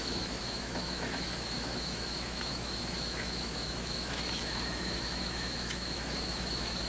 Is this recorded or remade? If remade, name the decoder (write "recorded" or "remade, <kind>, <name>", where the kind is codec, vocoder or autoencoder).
remade, autoencoder, DAC-VAE